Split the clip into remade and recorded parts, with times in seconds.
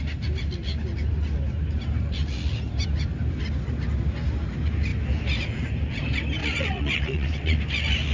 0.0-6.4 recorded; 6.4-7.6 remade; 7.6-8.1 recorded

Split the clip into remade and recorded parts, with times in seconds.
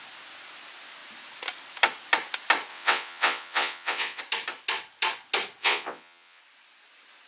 0.0-2.7 recorded; 2.7-4.2 remade; 4.2-5.6 recorded; 5.6-6.4 remade; 6.4-7.3 recorded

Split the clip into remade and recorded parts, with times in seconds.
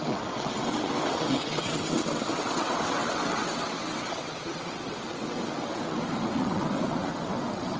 0.0-7.8 remade